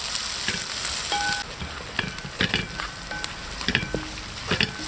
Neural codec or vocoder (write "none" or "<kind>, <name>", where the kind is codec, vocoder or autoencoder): none